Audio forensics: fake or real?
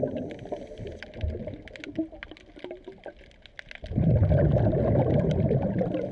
real